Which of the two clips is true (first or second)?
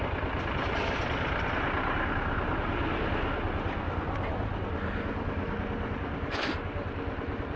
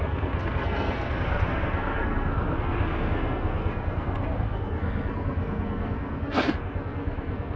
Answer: first